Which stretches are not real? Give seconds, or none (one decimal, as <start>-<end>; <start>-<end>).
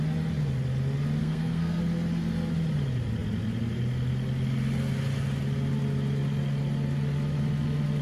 1.2-1.8